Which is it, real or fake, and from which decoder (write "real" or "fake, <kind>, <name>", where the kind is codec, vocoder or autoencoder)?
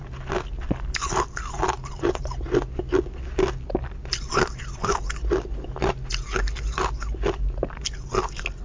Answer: real